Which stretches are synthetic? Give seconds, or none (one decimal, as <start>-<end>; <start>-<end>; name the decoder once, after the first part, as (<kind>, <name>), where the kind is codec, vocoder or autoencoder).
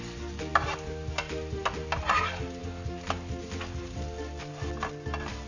none